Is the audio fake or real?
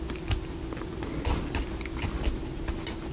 real